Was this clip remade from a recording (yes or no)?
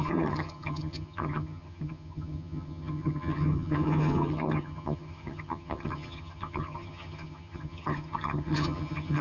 yes